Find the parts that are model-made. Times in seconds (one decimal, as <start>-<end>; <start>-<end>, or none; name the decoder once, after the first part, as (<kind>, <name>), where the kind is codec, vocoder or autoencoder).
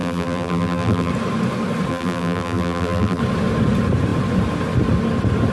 0.0-1.1 (vocoder, BigVGAN v2); 1.9-3.2